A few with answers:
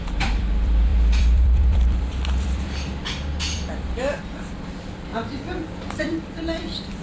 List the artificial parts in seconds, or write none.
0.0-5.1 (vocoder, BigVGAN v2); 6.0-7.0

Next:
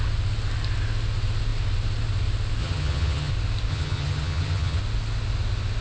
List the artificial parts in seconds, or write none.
2.6-3.3 (vocoder, HiFi-GAN); 3.7-4.8

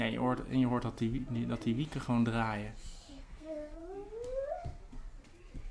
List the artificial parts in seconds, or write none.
3.1-3.8 (codec, SNAC)

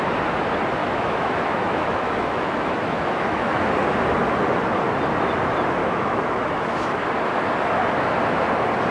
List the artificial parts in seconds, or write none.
0.8-3.7 (autoencoder, DAC-VAE); 5.8-7.0

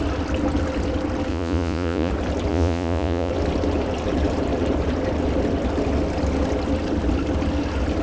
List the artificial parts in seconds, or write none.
1.3-2.1 (vocoder, Vocos); 2.5-3.3

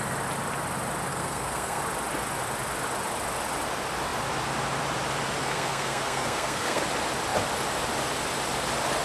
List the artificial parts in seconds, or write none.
1.1-1.8 (codec, SNAC); 5.4-6.8

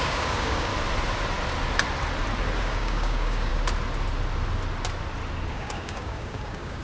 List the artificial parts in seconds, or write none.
0.0-0.7 (codec, DAC); 2.6-3.5; 5.5-6.8

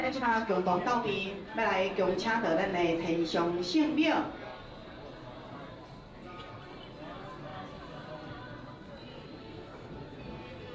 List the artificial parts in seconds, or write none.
0.0-0.8 (codec, SNAC); 9.4-9.9